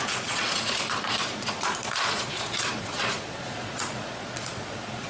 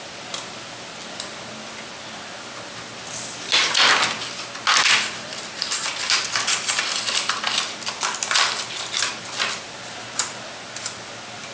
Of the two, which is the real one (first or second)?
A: second